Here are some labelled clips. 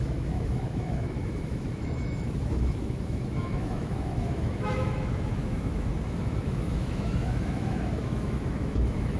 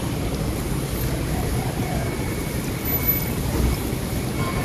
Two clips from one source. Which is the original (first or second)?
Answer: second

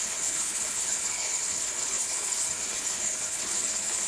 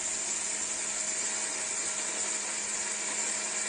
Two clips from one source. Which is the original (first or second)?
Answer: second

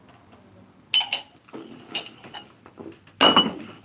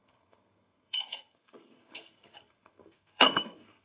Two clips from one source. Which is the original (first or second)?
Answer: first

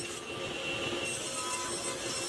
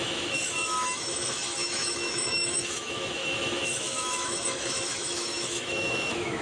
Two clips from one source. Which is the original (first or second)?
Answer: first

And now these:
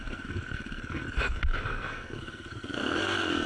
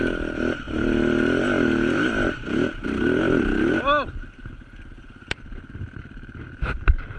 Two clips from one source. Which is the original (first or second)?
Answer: second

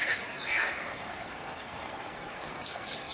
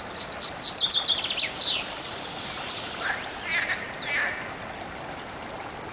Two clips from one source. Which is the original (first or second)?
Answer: second